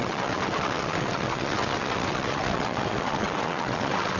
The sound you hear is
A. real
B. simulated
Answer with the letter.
B